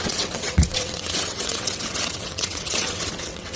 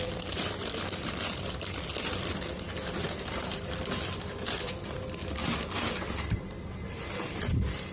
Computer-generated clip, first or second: first